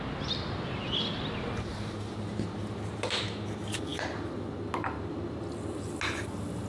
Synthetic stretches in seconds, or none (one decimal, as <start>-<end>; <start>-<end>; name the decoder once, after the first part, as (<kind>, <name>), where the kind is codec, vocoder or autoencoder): none